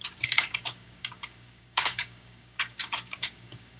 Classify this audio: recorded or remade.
remade